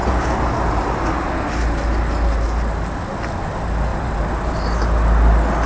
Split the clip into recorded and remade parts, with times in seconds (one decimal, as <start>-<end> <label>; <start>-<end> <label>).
0.0-3.9 recorded; 3.9-4.6 remade; 4.6-5.7 recorded